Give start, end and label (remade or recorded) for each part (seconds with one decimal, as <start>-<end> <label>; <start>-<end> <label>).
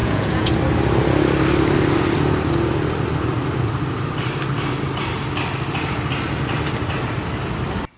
0.0-0.5 remade; 0.5-8.0 recorded